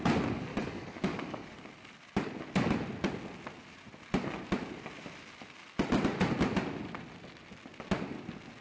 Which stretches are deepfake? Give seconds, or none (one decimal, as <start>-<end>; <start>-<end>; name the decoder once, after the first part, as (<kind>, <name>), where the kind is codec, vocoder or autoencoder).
0.5-1.7 (codec, DAC)